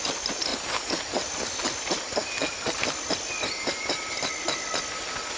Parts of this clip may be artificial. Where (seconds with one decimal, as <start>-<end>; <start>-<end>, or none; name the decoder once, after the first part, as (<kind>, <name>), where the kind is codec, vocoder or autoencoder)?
none